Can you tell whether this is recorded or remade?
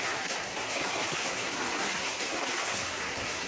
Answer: remade